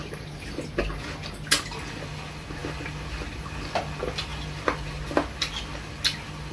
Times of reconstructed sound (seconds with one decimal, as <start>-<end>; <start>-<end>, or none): 0.0-0.7